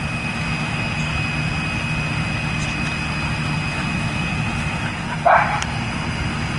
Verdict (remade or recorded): recorded